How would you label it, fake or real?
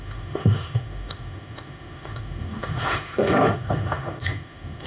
fake